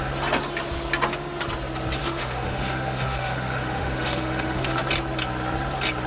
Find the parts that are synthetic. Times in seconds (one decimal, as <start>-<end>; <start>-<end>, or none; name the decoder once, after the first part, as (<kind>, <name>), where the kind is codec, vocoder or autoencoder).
2.0-4.8 (autoencoder, DAC-VAE)